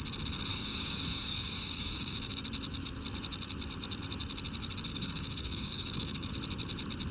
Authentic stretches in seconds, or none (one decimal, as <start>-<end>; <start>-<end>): 0.0-0.5; 2.4-4.9; 6.3-7.1